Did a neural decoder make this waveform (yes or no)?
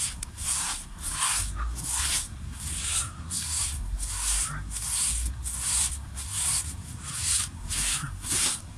yes